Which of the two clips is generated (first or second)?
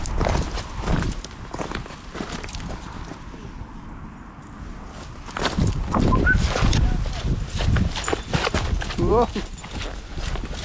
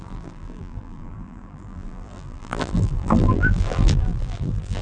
second